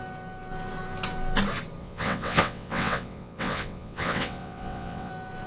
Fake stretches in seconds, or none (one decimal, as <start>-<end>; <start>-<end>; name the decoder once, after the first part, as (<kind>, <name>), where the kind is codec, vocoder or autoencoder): 1.8-5.1 (vocoder, WaveNeXt)